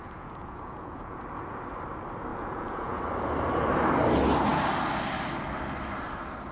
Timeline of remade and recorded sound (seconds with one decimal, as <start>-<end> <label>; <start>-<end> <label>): 0.0-1.2 remade; 1.2-2.3 recorded; 2.3-3.0 remade; 3.0-6.5 recorded